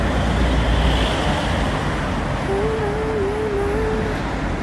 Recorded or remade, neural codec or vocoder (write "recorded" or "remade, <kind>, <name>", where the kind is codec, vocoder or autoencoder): recorded